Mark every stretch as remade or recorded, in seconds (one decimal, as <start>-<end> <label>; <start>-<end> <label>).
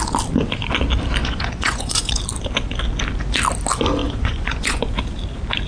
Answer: 0.0-1.2 recorded; 1.2-2.2 remade; 2.2-4.0 recorded; 4.0-4.8 remade; 4.8-5.7 recorded